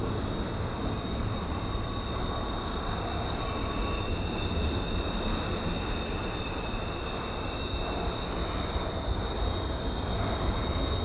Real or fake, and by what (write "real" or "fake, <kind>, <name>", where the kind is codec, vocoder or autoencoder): real